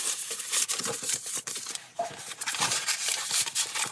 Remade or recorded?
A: remade